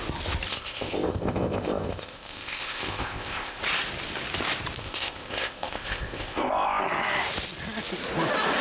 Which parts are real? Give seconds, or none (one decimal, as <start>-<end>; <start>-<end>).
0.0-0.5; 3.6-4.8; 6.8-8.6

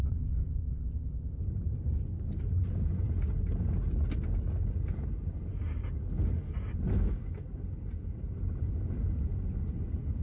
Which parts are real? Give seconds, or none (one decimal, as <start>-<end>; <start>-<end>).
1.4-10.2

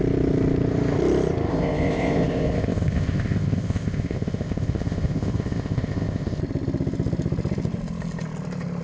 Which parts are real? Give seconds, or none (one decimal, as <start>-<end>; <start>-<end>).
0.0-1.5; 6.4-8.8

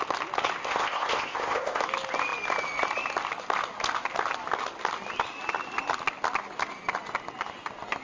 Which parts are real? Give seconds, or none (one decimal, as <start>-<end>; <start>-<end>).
0.0-0.6; 1.8-8.0